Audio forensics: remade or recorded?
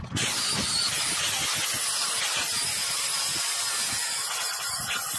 recorded